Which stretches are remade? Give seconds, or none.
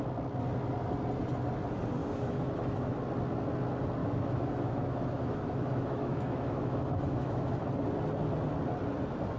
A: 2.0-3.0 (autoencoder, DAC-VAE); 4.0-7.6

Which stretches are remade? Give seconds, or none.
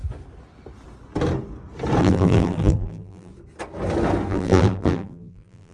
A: 2.0-3.3 (vocoder, BigVGAN v2); 4.3-5.7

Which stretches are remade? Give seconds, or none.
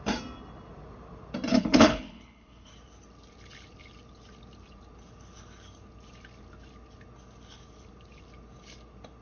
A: 1.5-2.7 (codec, HILCodec)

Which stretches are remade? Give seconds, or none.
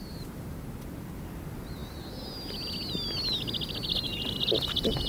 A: none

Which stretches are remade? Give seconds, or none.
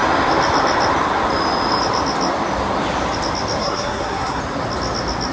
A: 3.6-4.4 (codec, SNAC)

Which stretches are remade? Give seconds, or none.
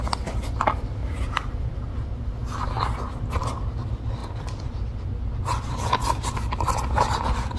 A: 1.0-1.5 (vocoder, BigVGAN v2)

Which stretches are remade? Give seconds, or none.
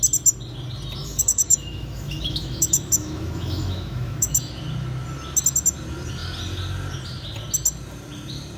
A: 1.0-4.5 (autoencoder, DAC-VAE)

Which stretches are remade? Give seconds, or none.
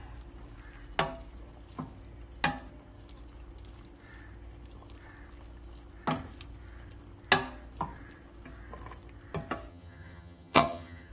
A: 9.7-11.1 (vocoder, HiFi-GAN)